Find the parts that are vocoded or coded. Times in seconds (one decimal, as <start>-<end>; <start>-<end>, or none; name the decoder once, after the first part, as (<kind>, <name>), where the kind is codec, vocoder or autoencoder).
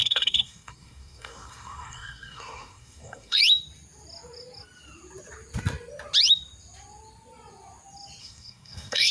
0.0-3.4 (codec, SNAC); 8.2-9.1